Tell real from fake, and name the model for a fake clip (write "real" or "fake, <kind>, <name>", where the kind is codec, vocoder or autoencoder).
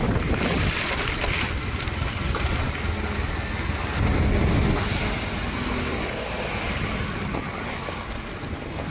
real